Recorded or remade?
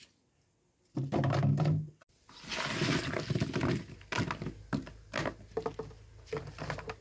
recorded